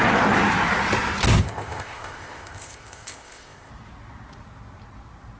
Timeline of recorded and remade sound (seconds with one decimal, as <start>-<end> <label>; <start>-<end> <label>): 0.0-1.4 recorded; 1.4-3.7 remade; 3.7-5.4 recorded